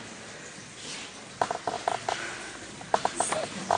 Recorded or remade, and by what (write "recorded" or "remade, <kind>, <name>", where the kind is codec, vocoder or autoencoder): recorded